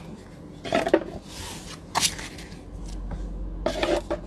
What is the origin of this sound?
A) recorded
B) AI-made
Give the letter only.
A